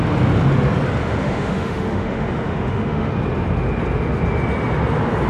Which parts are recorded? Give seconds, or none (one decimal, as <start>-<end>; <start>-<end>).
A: 0.0-1.0; 3.1-5.3